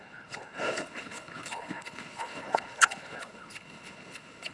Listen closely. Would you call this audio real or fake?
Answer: fake